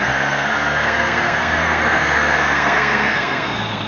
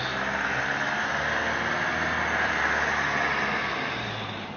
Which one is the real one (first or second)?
second